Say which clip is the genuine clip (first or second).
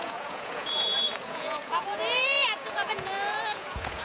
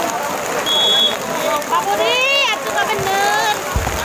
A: second